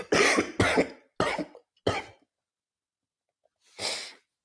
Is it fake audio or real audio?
real